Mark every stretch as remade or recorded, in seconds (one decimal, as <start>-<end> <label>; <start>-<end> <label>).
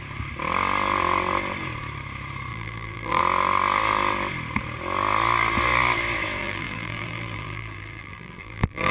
0.0-2.5 recorded; 2.5-3.2 remade; 3.2-6.4 recorded; 6.4-8.9 remade